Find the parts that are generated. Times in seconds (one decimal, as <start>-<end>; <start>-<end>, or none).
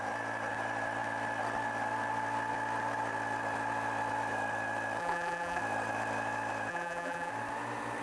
5.0-5.6; 6.7-7.3